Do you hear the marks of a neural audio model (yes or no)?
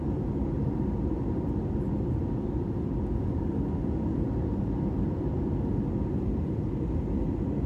no